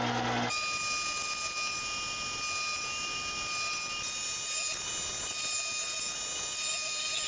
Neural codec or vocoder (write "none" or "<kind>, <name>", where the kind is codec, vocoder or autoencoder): none